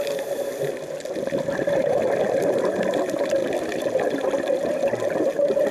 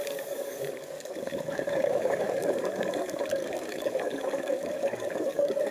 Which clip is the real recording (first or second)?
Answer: first